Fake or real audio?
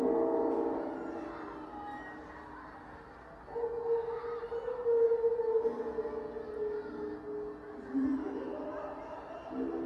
real